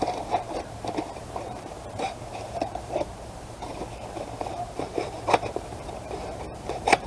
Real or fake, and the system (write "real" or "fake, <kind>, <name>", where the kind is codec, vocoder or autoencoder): fake, vocoder, BigVGAN v2